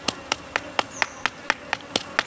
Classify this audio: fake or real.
real